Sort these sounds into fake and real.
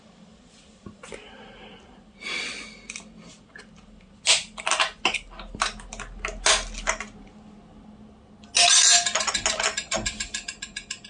real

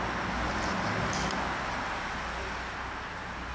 real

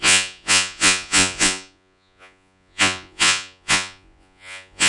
fake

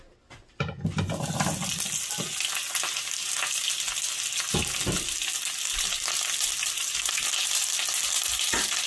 real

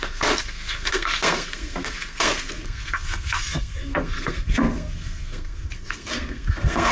fake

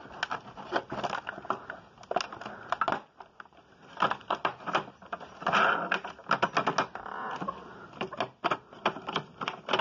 real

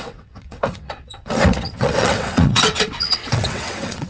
fake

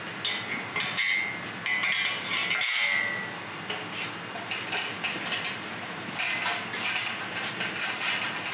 real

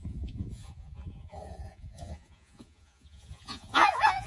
fake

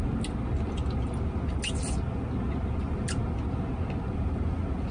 real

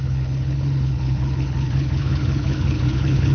fake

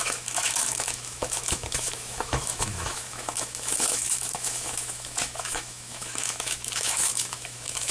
fake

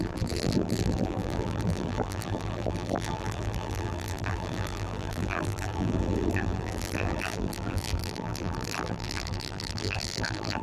fake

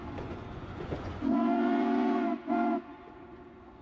fake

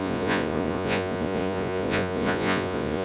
fake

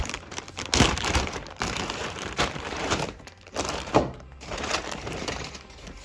fake